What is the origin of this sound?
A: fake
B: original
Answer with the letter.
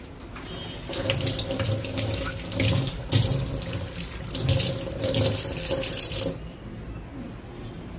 B